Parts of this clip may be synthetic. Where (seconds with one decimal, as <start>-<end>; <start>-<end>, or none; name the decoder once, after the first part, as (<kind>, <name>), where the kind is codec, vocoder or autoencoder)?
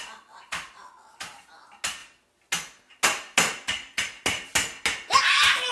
none